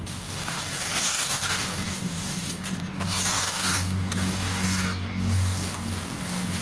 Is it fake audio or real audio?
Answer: fake